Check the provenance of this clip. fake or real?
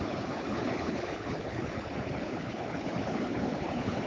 fake